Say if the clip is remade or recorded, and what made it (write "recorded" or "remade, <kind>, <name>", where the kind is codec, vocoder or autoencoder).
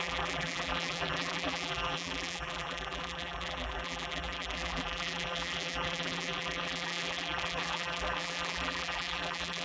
remade, vocoder, BigVGAN v2